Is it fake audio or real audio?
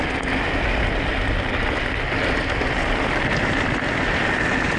real